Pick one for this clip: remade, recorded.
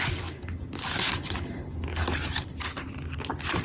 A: recorded